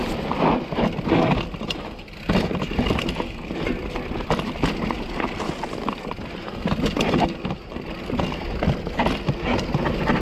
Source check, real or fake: real